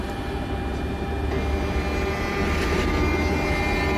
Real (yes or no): yes